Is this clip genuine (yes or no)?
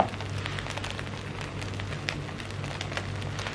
yes